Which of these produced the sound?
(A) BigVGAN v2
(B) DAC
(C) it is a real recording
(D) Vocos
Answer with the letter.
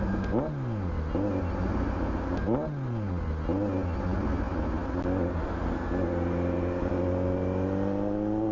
C